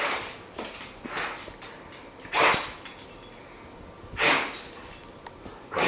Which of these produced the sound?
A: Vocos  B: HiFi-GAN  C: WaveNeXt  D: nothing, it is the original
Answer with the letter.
D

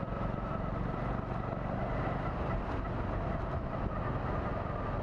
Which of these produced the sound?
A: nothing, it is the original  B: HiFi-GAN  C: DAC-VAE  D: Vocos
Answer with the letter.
A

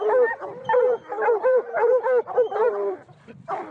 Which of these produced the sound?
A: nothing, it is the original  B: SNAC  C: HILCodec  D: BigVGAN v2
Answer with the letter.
D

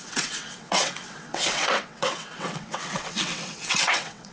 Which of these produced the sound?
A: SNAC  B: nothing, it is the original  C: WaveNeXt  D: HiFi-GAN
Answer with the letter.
C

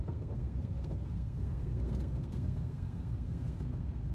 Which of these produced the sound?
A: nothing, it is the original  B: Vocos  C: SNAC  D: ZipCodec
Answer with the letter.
C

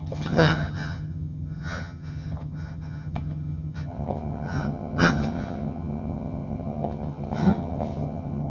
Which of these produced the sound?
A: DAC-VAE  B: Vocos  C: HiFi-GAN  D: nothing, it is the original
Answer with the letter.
C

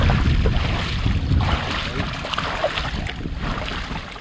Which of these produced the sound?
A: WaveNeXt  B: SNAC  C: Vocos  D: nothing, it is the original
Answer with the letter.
D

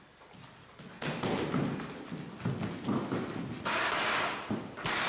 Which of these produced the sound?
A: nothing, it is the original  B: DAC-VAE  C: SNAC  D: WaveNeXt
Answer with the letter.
A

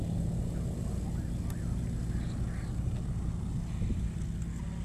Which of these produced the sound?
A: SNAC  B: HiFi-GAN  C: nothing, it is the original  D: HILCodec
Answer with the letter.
C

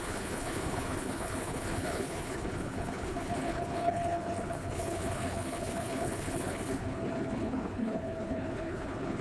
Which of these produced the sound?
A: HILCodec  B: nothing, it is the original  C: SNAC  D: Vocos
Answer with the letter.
A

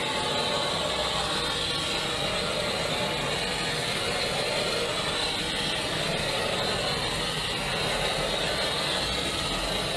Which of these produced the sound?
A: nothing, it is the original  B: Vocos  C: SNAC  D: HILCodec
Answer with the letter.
A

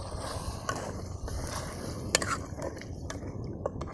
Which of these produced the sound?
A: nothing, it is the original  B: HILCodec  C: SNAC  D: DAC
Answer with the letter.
A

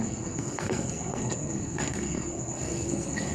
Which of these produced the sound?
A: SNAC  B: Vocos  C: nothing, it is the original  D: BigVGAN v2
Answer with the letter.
A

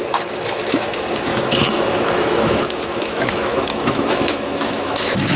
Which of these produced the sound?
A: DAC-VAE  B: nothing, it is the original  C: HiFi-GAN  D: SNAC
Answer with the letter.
A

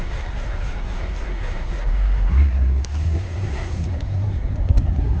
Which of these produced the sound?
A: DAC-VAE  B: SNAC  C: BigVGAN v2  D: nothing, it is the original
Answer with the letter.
B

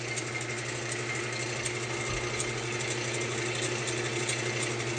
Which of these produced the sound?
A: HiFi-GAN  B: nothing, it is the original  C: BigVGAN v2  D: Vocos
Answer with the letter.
B